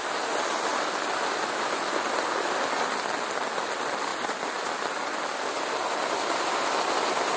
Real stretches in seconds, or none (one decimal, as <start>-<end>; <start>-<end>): 0.0-7.4